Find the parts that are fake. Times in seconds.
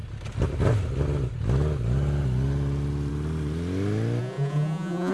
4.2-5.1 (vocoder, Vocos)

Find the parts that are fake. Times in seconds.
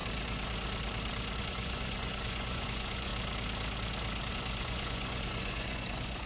1.4-3.1 (vocoder, Vocos); 4.3-6.3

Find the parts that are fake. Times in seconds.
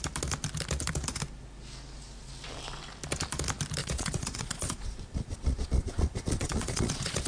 3.8-7.3 (vocoder, Vocos)